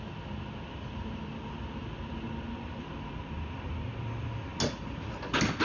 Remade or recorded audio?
recorded